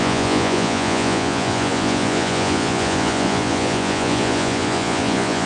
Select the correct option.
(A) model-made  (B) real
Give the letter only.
A